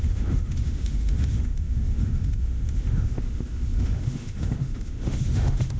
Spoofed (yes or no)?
yes